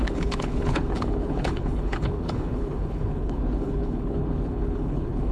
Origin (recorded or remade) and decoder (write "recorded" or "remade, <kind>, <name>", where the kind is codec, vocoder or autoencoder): remade, codec, HILCodec